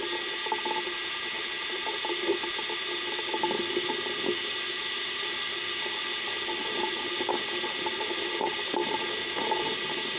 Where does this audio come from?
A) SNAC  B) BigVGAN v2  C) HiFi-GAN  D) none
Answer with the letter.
D